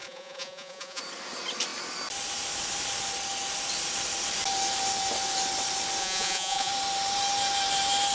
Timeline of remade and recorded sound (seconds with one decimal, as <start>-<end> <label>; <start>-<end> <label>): 0.0-1.0 remade; 1.0-6.0 recorded; 6.0-6.7 remade; 6.7-8.1 recorded